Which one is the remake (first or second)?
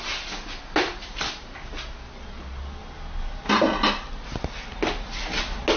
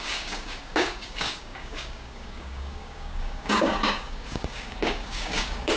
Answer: second